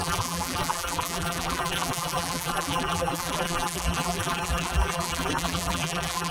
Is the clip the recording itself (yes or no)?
no